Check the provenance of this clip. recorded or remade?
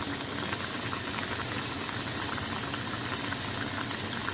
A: recorded